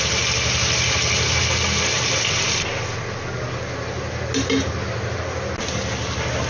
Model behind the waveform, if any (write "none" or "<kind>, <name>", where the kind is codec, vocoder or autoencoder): none